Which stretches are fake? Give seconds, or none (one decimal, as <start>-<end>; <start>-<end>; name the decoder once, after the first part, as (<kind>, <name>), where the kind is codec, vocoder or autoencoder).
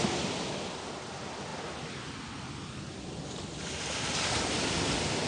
none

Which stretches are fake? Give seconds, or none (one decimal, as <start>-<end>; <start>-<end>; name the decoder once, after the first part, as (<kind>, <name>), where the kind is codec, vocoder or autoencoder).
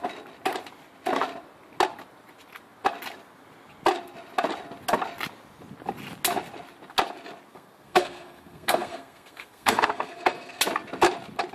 7.5-10.6 (codec, SNAC)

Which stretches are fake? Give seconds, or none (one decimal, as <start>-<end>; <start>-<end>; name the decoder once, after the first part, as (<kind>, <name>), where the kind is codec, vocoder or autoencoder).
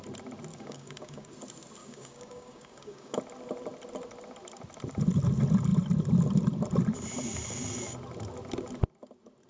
0.5-1.3 (codec, DAC); 1.8-3.2